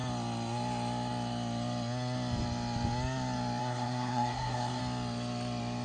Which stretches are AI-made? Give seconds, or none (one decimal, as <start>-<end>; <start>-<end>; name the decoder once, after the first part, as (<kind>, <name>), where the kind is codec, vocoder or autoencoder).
3.6-4.8 (codec, SNAC)